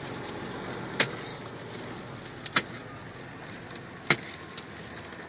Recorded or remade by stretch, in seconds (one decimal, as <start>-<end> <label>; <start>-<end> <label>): 0.0-5.3 recorded